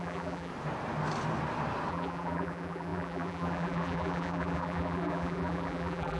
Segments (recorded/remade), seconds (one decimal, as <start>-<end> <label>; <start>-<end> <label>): 0.0-0.5 remade; 0.5-1.9 recorded; 1.9-6.2 remade